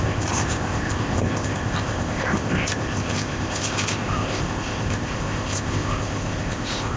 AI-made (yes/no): yes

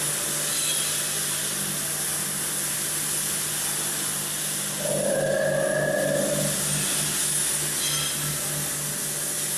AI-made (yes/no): no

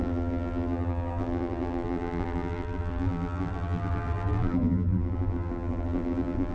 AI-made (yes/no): yes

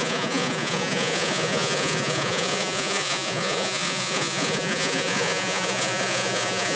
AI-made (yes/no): yes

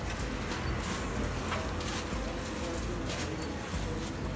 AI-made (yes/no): no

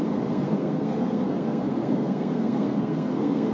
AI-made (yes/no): yes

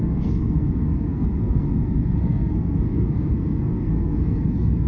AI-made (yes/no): yes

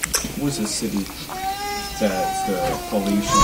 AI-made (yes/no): no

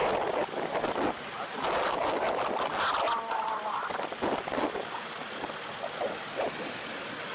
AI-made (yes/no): no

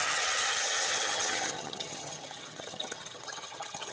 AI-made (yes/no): yes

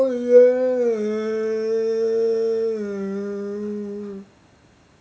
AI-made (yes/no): no